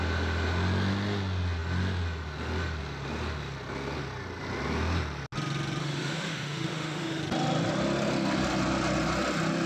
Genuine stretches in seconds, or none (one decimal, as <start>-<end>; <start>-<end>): 0.0-5.8; 7.2-9.7